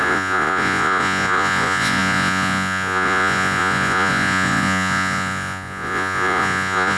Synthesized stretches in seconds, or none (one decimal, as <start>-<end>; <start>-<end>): 0.0-7.0